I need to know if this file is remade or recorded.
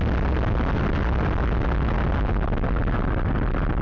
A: recorded